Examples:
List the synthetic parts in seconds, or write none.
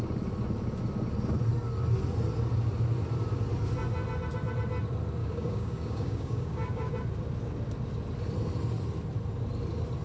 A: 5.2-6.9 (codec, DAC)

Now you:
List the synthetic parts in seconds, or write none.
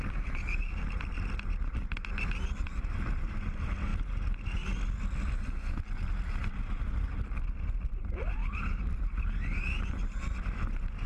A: none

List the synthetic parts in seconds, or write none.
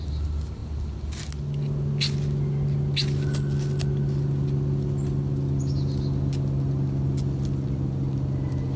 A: none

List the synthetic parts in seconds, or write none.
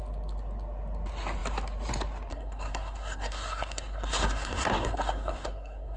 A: 2.3-6.0 (codec, SNAC)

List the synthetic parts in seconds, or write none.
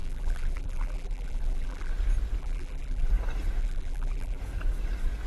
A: 0.0-1.9 (vocoder, BigVGAN v2); 2.4-3.1; 3.6-4.4